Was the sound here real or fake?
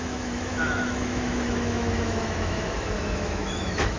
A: fake